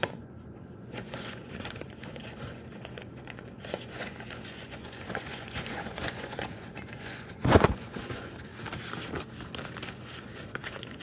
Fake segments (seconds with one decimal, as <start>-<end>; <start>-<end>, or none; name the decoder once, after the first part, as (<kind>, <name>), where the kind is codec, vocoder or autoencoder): 0.0-8.5 (vocoder, Vocos); 9.9-11.0